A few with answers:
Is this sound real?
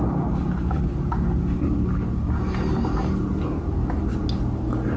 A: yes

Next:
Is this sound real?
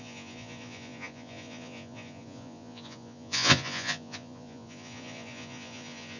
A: no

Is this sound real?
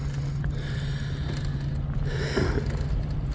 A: yes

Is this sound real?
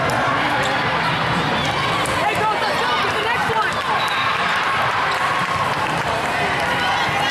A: yes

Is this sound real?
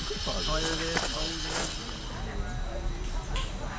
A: yes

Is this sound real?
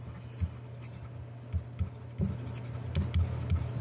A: yes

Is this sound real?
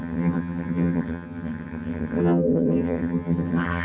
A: no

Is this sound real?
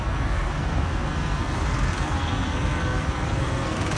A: no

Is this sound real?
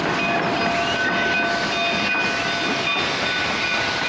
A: yes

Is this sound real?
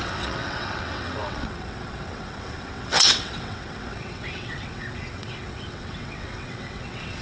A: no